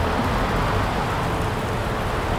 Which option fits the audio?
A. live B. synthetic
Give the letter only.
A